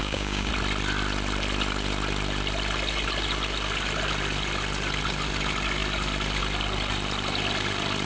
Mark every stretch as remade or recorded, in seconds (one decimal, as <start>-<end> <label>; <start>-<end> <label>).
0.0-0.5 remade; 0.5-8.0 recorded